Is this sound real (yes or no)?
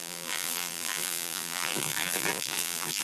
no